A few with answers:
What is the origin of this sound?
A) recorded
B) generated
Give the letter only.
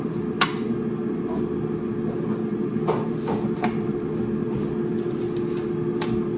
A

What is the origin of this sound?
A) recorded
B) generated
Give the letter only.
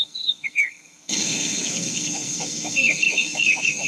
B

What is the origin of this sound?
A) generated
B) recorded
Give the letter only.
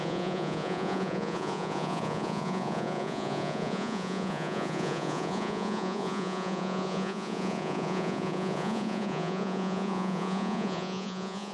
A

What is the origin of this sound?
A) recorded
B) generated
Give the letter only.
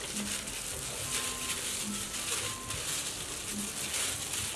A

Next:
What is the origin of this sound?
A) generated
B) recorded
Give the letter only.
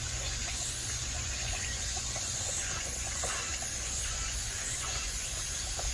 A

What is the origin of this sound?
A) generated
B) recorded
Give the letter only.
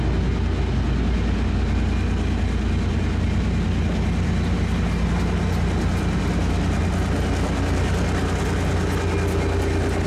B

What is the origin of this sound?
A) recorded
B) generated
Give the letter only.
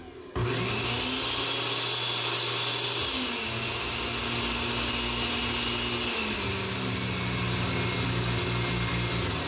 A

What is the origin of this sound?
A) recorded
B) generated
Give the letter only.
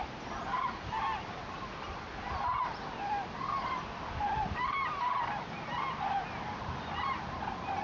A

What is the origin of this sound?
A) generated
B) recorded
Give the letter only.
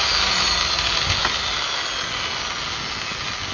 B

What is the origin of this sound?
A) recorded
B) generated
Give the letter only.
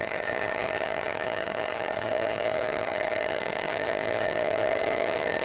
B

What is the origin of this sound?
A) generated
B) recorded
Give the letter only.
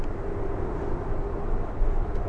B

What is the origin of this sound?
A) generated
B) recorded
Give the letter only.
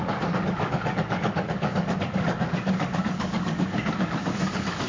A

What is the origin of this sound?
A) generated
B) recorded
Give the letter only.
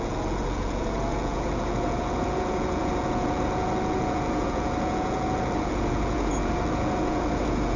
A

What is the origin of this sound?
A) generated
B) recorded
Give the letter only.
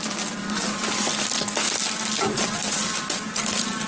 B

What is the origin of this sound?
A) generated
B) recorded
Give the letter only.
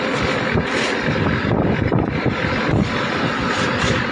B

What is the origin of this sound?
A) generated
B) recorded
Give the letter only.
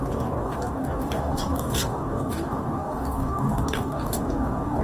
A